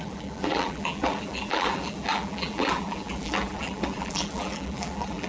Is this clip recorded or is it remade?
remade